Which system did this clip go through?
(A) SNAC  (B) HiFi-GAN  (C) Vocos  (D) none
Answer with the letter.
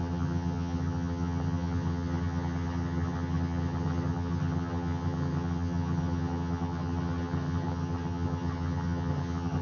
B